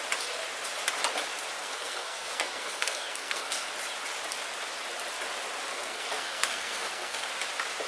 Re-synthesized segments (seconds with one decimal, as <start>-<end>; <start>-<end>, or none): 1.6-3.7; 5.7-7.3